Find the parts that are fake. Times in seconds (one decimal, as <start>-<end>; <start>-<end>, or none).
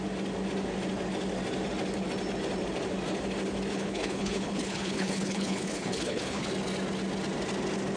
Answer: 3.7-6.5